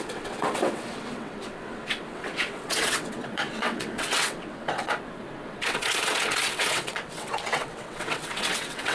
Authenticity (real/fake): fake